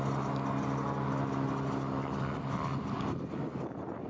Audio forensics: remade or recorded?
recorded